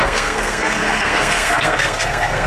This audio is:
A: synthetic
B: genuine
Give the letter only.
A